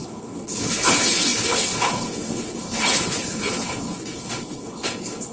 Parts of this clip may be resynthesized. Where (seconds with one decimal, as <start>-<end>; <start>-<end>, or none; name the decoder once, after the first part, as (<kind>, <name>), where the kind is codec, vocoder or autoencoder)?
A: 0.0-5.3 (codec, HILCodec)